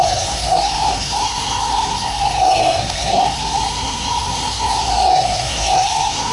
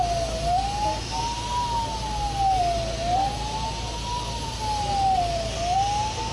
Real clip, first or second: second